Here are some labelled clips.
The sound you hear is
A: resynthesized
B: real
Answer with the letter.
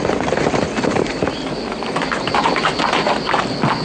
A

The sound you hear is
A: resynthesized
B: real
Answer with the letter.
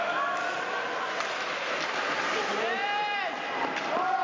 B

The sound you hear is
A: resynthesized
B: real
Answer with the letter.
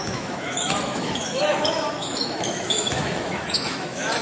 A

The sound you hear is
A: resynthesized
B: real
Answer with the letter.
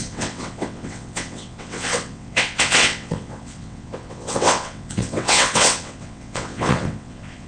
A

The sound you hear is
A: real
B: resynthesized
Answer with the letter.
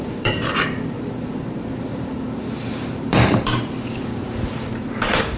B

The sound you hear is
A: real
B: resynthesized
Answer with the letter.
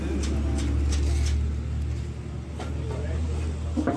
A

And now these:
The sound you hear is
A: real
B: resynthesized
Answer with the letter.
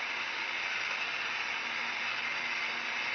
A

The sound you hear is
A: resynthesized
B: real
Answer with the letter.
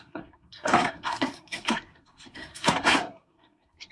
A